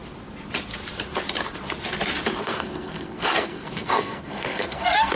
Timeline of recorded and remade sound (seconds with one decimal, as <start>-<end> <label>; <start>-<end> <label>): 0.0-2.4 recorded; 2.4-5.2 remade